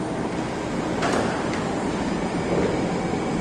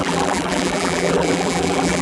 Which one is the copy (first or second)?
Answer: second